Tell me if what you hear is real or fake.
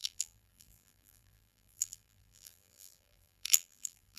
fake